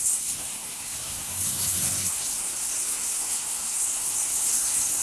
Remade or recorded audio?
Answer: remade